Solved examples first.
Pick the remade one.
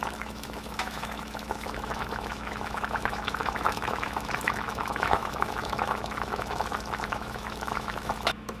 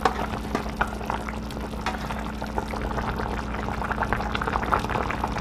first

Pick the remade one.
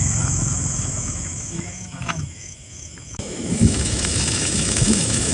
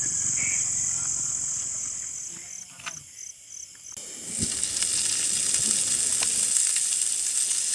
first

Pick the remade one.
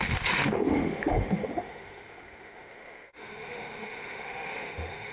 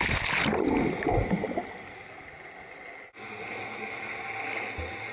first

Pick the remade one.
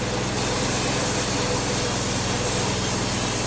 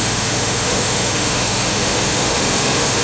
second